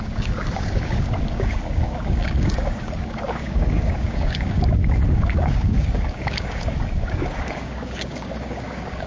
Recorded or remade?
remade